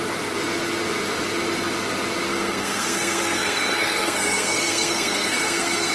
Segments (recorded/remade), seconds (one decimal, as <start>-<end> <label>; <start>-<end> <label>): 0.0-2.3 recorded; 2.3-5.9 remade